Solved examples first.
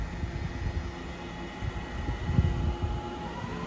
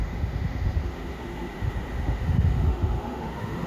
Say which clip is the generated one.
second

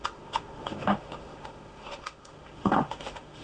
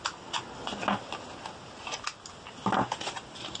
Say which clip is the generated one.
first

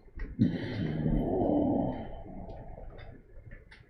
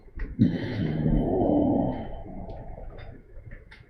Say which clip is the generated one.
second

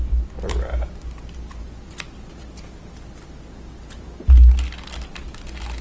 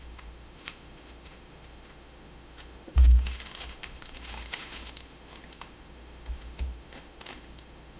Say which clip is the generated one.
second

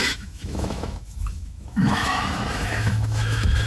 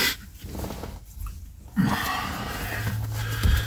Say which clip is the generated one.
first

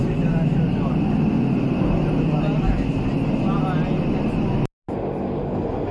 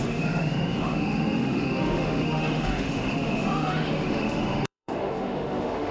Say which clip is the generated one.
second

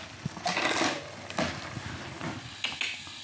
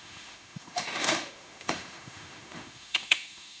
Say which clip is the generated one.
second